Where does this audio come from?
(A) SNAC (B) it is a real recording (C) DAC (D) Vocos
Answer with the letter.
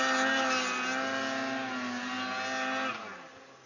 B